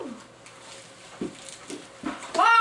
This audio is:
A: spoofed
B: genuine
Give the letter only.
B